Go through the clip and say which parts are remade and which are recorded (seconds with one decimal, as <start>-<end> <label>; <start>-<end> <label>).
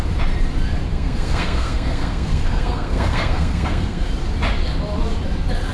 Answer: 0.0-0.9 recorded; 0.9-4.1 remade; 4.1-5.7 recorded